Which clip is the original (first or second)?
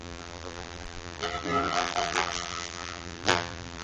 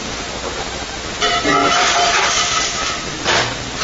second